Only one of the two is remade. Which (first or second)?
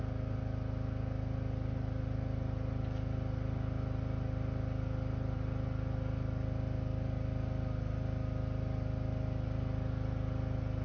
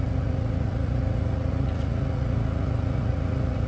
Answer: second